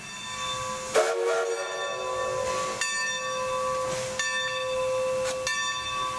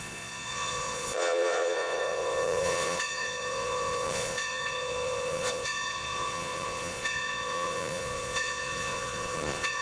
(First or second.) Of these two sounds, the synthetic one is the second